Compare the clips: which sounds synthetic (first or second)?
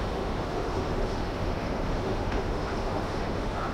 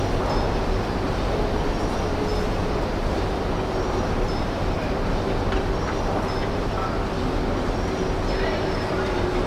first